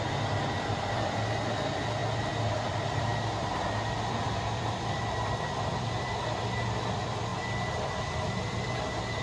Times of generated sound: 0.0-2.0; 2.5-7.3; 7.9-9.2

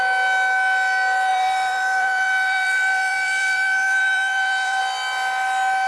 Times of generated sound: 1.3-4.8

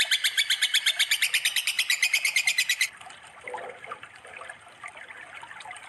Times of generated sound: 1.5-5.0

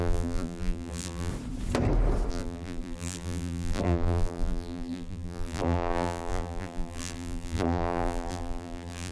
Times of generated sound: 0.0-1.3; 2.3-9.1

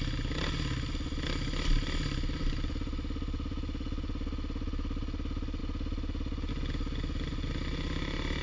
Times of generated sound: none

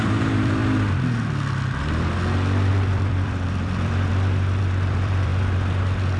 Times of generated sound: 0.0-0.6; 2.7-4.1; 4.6-5.3